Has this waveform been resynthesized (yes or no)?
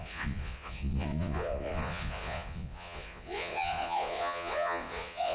yes